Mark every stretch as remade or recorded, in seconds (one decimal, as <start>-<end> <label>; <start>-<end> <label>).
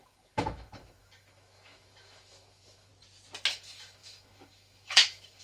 0.0-2.9 remade; 2.9-3.5 recorded; 3.5-5.4 remade